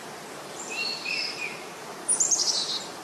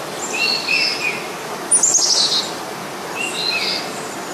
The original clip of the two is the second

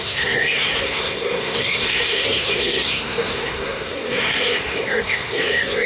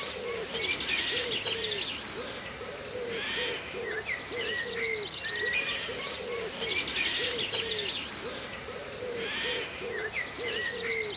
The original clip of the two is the second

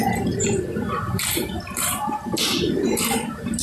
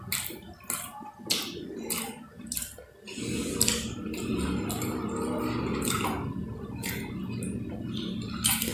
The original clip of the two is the second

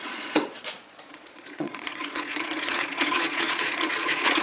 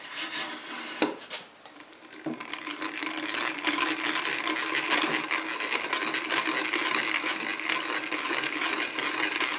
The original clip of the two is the second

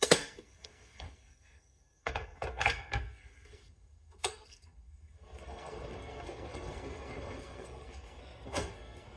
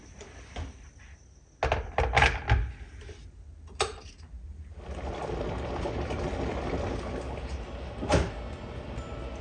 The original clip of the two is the second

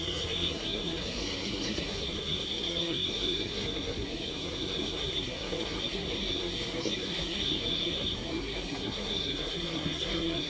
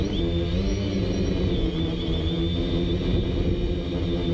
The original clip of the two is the second